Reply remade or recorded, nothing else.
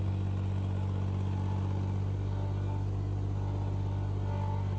recorded